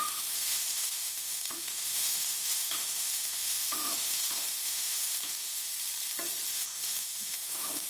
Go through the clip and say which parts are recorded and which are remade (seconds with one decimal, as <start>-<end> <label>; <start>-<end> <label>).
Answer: 0.0-5.7 remade; 5.7-6.5 recorded; 6.5-7.9 remade